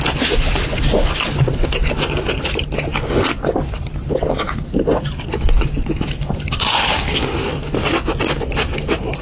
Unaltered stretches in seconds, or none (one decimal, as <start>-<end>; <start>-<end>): 0.0-9.2